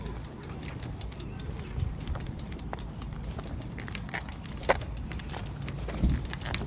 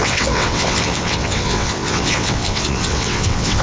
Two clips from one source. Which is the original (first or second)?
first